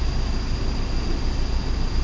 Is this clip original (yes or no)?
yes